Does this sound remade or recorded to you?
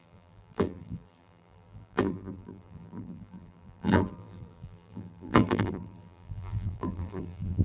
remade